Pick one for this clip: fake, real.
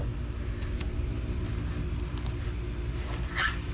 real